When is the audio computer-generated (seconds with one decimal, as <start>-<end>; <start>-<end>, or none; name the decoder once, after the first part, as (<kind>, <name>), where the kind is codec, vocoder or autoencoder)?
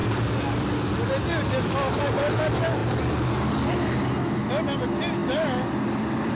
none